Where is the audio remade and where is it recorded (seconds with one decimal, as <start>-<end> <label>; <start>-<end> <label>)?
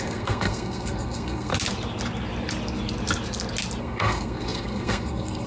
0.0-1.5 remade; 1.5-3.8 recorded; 3.8-5.5 remade